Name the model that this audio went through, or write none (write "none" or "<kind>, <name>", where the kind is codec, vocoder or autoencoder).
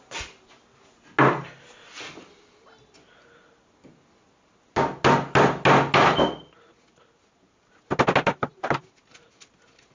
none